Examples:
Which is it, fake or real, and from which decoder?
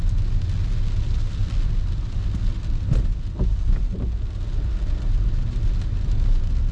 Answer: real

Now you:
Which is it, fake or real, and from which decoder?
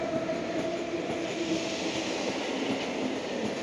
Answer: real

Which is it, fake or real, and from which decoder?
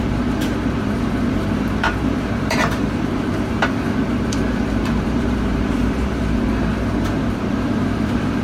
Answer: fake, vocoder, BigVGAN v2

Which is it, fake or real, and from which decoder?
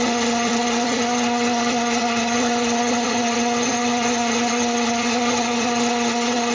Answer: fake, vocoder, HiFi-GAN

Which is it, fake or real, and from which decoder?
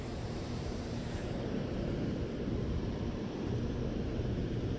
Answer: fake, vocoder, BigVGAN v2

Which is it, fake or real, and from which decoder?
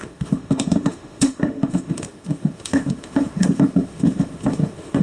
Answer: fake, autoencoder, DAC-VAE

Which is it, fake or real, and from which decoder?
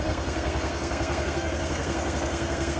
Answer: fake, codec, SNAC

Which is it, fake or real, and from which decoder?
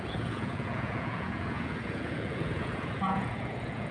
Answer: fake, vocoder, Vocos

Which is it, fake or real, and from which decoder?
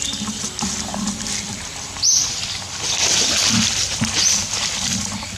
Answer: real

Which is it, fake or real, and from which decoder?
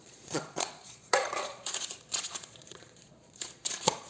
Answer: fake, vocoder, Vocos